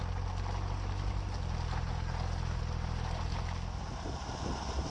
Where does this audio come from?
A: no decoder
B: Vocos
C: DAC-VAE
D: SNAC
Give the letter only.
A